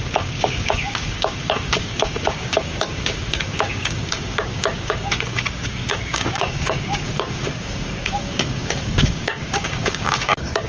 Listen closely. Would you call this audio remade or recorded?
remade